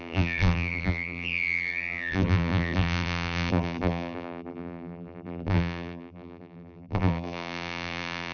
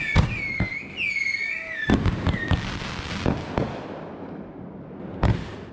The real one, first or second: second